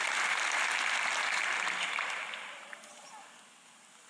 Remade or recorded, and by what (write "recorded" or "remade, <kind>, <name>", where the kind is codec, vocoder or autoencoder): recorded